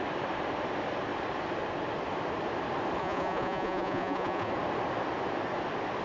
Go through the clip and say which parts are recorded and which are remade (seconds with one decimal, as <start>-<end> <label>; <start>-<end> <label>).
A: 0.0-3.0 recorded; 3.0-4.5 remade; 4.5-6.0 recorded